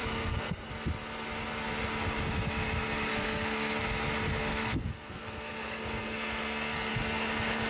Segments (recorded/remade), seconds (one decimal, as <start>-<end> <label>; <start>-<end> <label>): 0.0-0.7 remade; 0.7-3.1 recorded; 3.1-3.8 remade; 3.8-4.5 recorded; 4.5-6.9 remade; 6.9-7.7 recorded